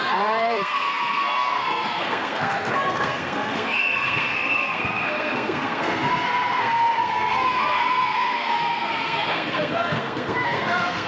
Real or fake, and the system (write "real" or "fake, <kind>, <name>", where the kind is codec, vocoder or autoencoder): fake, codec, SNAC